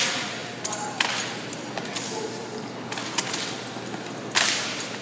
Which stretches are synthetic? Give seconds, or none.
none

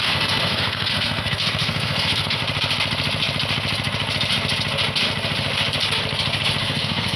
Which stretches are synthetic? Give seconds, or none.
0.0-2.4 (codec, SNAC); 6.6-7.2

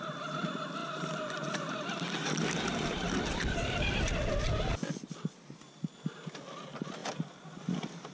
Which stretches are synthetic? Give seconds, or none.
none

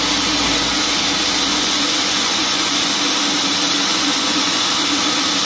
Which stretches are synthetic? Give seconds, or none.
1.5-2.9 (vocoder, Vocos); 3.9-4.6

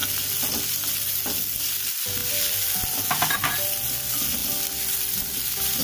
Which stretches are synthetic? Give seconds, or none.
none